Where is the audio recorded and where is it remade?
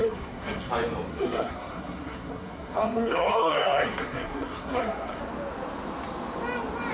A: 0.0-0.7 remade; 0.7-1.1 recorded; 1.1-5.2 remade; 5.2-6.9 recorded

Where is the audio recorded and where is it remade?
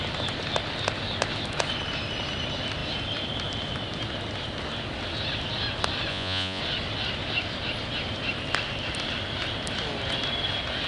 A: 0.0-6.1 recorded; 6.1-6.6 remade; 6.6-10.9 recorded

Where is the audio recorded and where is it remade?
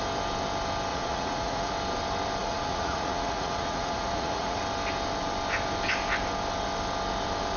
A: 0.0-0.9 recorded; 0.9-1.7 remade; 1.7-2.4 recorded; 2.4-4.6 remade; 4.6-7.6 recorded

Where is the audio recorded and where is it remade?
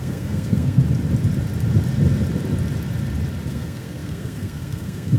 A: 0.0-0.8 remade; 0.8-3.5 recorded; 3.5-5.2 remade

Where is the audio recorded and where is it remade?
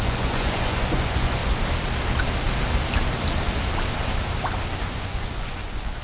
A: 0.0-1.4 remade; 1.4-4.8 recorded; 4.8-6.0 remade